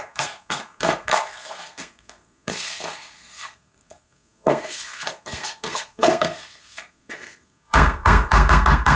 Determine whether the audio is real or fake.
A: fake